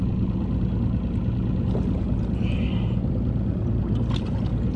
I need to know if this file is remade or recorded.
recorded